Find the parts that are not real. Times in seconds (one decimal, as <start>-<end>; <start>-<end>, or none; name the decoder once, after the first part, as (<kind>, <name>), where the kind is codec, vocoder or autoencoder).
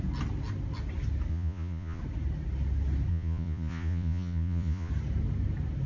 1.3-2.0 (vocoder, Vocos); 3.1-4.9